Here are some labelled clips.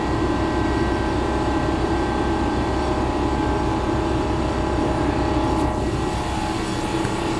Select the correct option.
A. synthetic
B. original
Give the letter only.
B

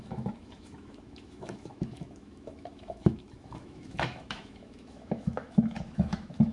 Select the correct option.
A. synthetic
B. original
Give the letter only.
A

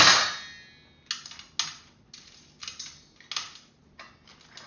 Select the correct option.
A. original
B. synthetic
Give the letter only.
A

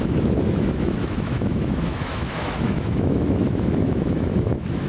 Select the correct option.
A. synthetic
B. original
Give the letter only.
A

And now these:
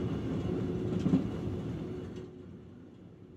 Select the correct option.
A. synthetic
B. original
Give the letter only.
B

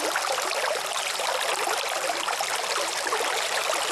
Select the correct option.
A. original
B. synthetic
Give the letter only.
A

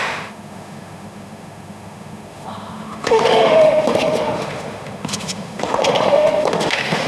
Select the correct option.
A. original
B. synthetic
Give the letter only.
B